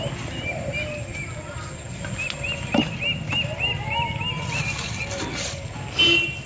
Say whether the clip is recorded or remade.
recorded